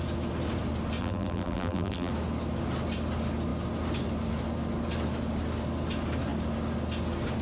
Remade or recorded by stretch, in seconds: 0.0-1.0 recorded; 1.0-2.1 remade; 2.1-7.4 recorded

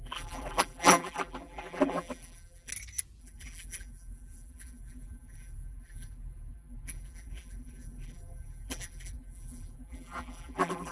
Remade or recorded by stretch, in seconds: 0.0-2.7 remade; 2.7-3.2 recorded; 3.2-10.9 remade

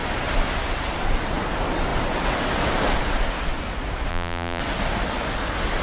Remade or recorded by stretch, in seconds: 0.0-4.1 recorded; 4.1-4.6 remade; 4.6-5.8 recorded

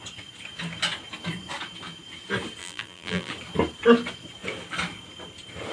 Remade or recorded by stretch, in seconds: 0.0-2.6 recorded; 2.6-3.3 remade; 3.3-5.7 recorded

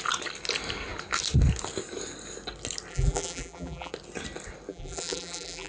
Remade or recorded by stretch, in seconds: 0.0-2.9 recorded; 2.9-3.9 remade; 3.9-4.7 recorded; 4.7-5.7 remade